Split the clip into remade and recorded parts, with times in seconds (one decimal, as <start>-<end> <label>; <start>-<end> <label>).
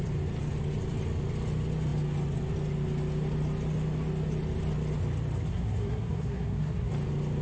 0.0-5.5 recorded; 5.5-6.9 remade; 6.9-7.4 recorded